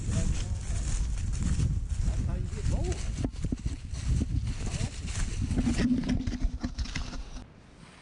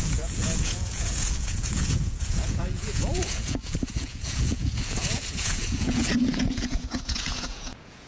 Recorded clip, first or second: first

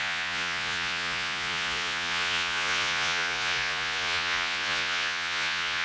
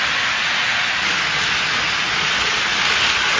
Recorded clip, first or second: second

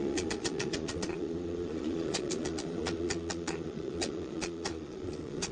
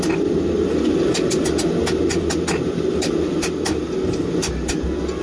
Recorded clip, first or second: second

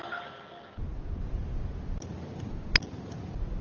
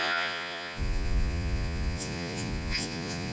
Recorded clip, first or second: first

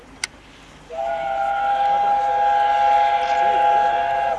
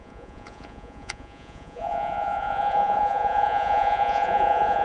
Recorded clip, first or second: first